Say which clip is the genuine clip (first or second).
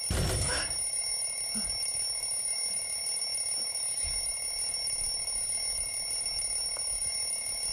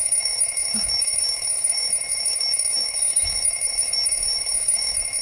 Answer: first